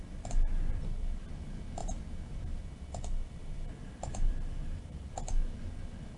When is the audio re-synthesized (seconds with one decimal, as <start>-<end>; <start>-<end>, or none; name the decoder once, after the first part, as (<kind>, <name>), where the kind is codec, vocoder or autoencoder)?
1.8-2.6 (vocoder, BigVGAN v2); 3.4-5.1